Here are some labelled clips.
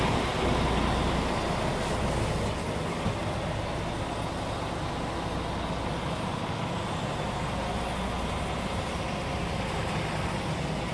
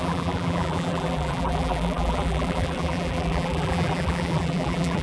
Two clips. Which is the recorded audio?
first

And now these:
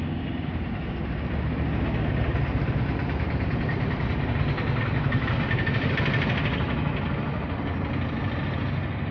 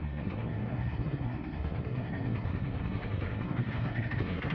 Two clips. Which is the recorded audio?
first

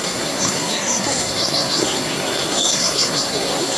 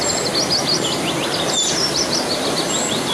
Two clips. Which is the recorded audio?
second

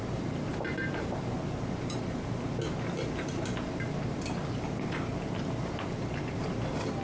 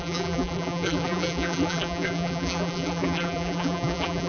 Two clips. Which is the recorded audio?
first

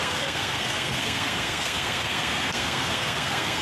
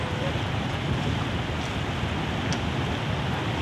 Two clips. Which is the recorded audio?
second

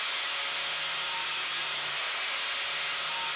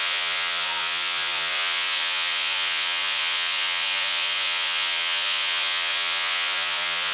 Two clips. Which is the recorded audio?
first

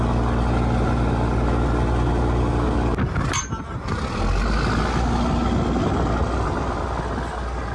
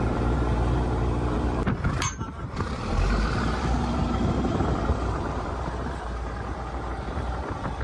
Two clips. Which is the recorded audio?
first